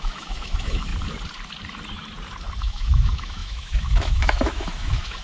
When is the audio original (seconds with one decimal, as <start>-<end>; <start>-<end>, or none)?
0.9-2.6